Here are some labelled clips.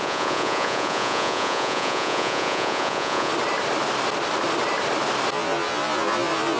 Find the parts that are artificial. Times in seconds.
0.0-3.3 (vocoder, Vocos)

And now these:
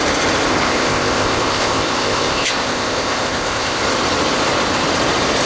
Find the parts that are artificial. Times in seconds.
0.5-3.8 (codec, ZipCodec)